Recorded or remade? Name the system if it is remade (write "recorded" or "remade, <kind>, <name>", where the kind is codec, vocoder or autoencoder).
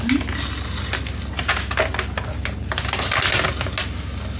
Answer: recorded